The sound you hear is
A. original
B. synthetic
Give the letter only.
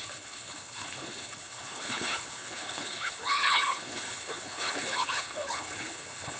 B